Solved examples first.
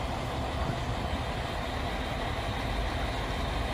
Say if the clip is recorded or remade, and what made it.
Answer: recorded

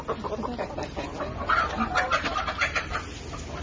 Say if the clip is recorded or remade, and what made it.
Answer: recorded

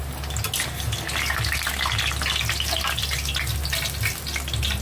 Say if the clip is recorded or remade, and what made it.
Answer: recorded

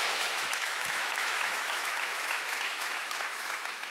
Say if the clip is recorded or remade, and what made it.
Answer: remade, autoencoder, DAC-VAE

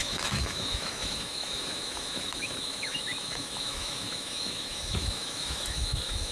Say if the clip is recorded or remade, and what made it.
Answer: remade, autoencoder, DAC-VAE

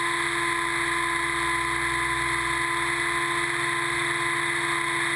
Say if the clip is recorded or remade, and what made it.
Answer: recorded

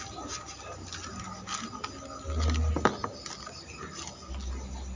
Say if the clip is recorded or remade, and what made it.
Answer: recorded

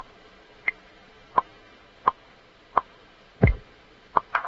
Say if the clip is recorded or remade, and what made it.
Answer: recorded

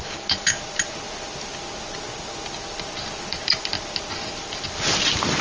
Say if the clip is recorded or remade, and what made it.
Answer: recorded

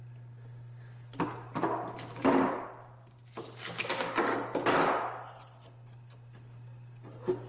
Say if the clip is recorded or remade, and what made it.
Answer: recorded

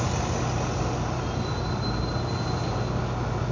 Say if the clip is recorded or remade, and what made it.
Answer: recorded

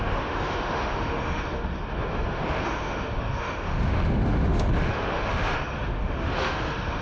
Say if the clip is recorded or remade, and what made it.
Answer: remade, autoencoder, DAC-VAE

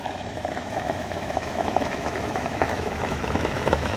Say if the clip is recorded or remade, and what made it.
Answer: remade, autoencoder, DAC-VAE